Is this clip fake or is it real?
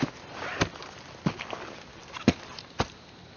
real